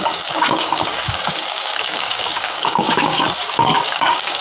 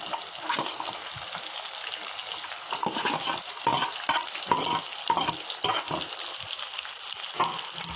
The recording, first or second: second